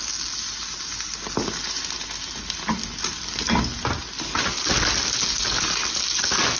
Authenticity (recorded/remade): recorded